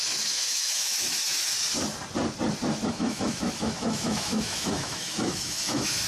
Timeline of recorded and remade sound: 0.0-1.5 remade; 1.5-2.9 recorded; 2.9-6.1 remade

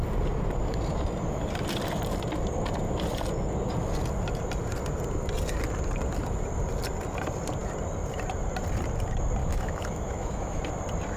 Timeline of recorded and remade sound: 0.0-9.4 recorded; 9.4-10.6 remade; 10.6-11.2 recorded

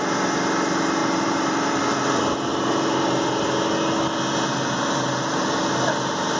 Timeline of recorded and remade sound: 0.0-1.0 recorded; 1.0-1.8 remade; 1.8-6.4 recorded

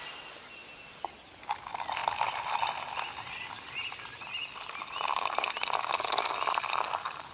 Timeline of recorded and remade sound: 0.0-7.3 recorded